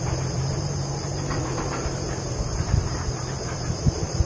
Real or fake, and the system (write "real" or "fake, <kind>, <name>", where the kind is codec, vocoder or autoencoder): fake, vocoder, BigVGAN v2